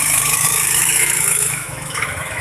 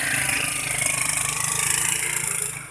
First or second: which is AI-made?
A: first